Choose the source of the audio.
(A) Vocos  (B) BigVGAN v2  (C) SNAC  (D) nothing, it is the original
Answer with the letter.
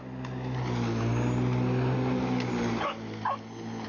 D